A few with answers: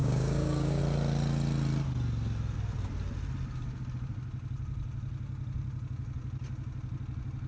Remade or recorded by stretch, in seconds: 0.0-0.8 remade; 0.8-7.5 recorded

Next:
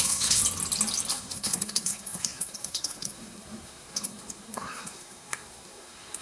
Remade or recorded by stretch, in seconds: 0.0-0.4 remade; 0.4-1.1 recorded; 1.1-6.2 remade

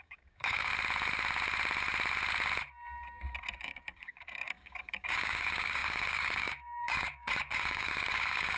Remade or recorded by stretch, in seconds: 0.0-0.7 remade; 0.7-3.6 recorded; 3.6-8.6 remade